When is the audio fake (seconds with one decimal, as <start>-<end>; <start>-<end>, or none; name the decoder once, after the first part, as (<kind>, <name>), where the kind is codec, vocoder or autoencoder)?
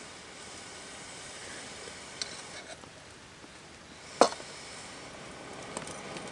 none